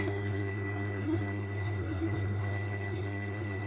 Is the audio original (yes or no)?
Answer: no